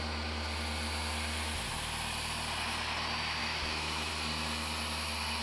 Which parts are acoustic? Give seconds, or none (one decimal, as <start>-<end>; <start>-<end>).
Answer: 0.0-3.4; 4.1-5.4

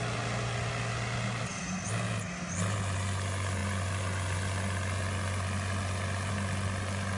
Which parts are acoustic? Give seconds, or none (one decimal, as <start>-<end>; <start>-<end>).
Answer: 0.0-7.2

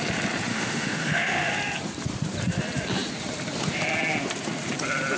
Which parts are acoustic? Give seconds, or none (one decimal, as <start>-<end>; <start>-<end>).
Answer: 0.0-0.5; 1.5-5.2

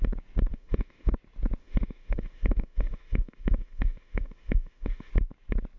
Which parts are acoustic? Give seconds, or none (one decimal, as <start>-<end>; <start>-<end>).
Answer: 0.0-0.5; 1.1-1.6; 5.1-5.8